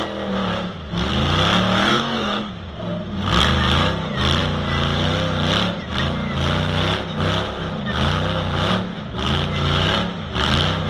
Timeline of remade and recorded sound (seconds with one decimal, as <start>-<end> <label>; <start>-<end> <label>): 0.0-1.9 recorded; 1.9-2.5 remade; 2.5-10.9 recorded